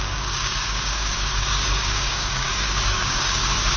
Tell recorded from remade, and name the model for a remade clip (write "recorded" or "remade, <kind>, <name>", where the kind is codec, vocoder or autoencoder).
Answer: remade, codec, DAC